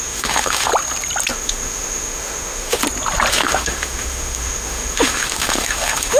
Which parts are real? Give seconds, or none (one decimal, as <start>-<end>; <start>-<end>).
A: 0.7-1.3; 2.8-3.3